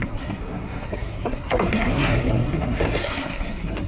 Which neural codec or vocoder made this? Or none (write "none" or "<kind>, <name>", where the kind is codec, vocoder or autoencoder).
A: codec, SNAC